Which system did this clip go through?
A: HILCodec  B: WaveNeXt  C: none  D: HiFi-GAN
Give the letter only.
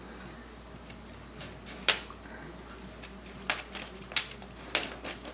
C